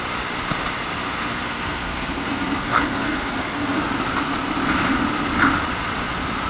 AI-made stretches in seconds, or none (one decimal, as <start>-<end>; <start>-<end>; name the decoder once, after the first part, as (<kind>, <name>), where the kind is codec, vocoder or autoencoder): 1.2-3.8 (codec, SNAC)